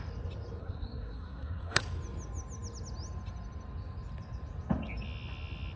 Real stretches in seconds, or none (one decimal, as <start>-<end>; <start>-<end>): 0.0-0.6; 1.8-5.8